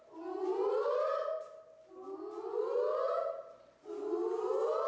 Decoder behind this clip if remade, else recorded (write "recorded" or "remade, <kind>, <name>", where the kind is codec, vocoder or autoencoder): recorded